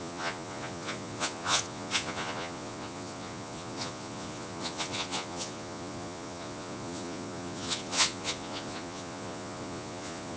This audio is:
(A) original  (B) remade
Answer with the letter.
B